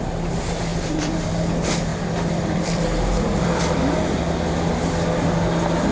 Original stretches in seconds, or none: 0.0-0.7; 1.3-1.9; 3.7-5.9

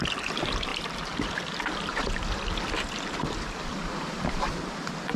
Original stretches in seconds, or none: 0.0-0.7; 2.1-3.7; 4.5-5.2

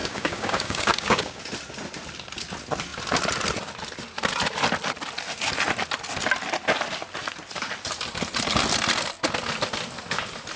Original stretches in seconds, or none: 1.4-10.6